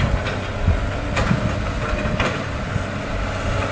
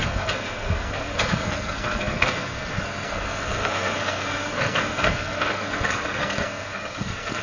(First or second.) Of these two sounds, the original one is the first